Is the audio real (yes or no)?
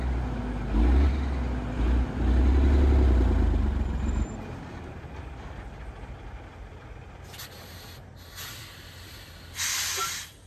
yes